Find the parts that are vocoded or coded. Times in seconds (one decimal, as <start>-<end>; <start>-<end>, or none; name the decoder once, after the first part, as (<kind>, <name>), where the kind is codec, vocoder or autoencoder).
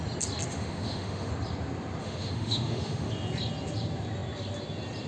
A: 0.5-1.3 (autoencoder, DAC-VAE); 2.0-3.1